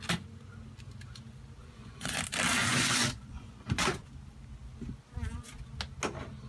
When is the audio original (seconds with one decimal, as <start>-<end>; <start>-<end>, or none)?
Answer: 0.0-1.6; 2.2-2.6; 4.1-6.5